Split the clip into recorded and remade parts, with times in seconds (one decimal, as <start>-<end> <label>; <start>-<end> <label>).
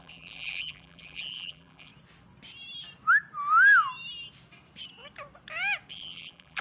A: 0.0-1.9 remade; 1.9-5.9 recorded; 5.9-6.6 remade